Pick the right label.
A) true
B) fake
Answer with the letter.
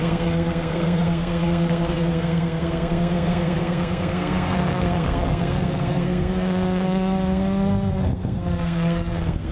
B